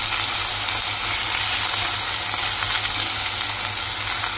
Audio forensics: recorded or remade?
recorded